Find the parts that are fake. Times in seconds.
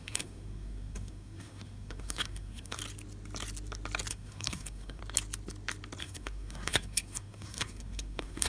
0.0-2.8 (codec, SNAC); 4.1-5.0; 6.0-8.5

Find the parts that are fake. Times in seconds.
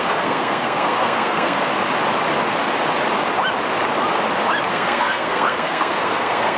0.0-1.7 (codec, SNAC); 4.7-6.6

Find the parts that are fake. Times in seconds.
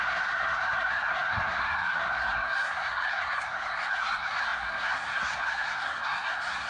0.0-6.7 (codec, SNAC)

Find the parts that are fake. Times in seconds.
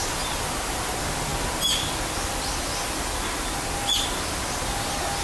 none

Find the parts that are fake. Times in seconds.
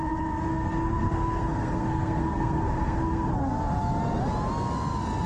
0.5-3.3 (codec, SNAC)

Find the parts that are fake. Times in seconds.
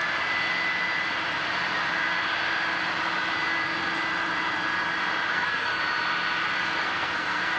5.3-5.8 (codec, SNAC); 6.6-7.6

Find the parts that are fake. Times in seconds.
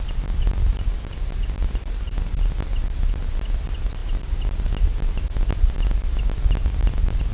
none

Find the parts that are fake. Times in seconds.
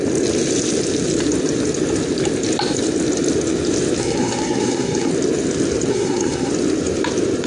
4.0-5.1 (codec, SNAC); 5.9-6.5